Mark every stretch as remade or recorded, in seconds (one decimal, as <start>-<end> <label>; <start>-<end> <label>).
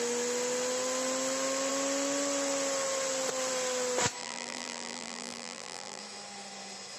0.0-4.2 recorded; 4.2-6.0 remade; 6.0-7.0 recorded